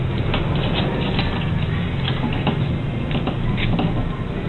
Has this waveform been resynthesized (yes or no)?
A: no